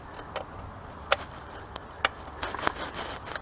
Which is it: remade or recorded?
recorded